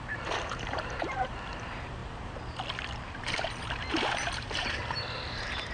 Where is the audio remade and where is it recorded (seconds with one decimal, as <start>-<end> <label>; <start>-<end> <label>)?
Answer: 0.0-2.0 remade; 2.0-3.9 recorded; 3.9-5.7 remade